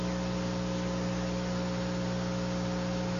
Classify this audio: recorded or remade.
recorded